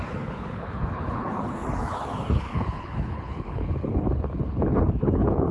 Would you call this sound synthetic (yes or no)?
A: yes